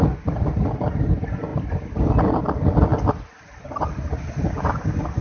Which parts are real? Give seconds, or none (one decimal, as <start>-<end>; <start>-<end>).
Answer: 0.0-5.2